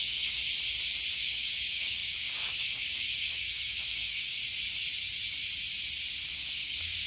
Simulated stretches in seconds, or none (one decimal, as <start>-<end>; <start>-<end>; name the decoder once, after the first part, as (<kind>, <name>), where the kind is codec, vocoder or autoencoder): 0.0-0.4 (codec, DAC); 1.1-4.4; 6.3-7.1